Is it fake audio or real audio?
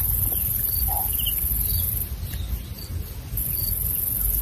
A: real